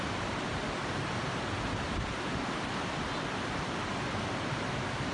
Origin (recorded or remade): recorded